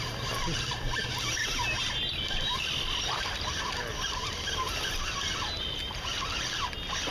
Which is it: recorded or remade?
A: recorded